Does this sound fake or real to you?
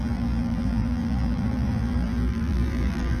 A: fake